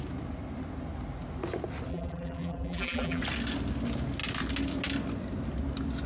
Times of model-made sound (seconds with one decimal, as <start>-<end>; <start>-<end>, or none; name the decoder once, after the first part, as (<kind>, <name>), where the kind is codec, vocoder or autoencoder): 1.9-3.2 (vocoder, BigVGAN v2)